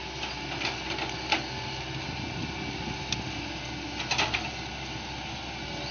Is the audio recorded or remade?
recorded